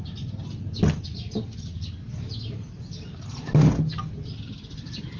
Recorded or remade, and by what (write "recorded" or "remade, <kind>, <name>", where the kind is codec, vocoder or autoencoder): recorded